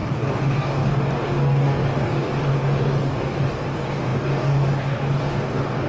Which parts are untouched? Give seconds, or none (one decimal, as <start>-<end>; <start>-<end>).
none